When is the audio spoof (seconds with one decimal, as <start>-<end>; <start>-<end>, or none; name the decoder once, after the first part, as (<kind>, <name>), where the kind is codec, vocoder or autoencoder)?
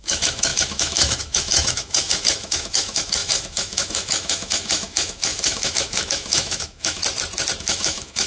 0.0-7.0 (autoencoder, DAC-VAE); 7.6-8.3